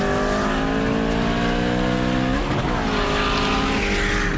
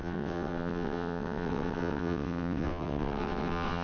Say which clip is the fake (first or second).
second